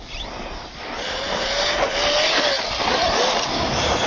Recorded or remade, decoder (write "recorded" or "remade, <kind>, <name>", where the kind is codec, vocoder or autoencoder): recorded